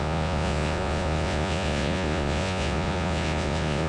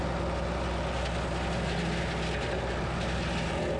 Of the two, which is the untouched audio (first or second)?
second